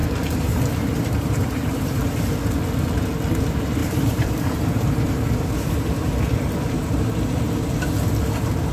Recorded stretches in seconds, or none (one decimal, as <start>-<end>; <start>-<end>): 2.0-3.8; 5.7-8.7